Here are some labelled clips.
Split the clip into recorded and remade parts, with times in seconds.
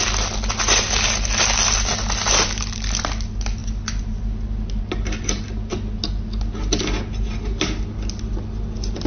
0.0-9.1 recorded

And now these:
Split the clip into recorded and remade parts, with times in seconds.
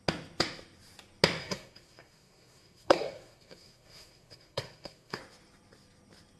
0.0-1.4 recorded; 1.4-5.2 remade; 5.2-6.4 recorded